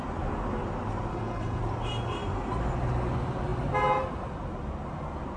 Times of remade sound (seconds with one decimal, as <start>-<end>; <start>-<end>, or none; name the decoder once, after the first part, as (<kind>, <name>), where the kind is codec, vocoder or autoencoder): 1.1-1.6 (codec, HILCodec)